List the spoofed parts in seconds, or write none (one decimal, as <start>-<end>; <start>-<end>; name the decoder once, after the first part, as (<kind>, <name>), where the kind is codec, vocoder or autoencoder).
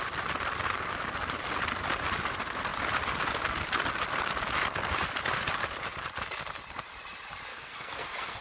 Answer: 7.5-8.4 (codec, SNAC)